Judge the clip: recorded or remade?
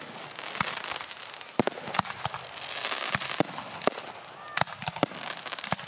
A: recorded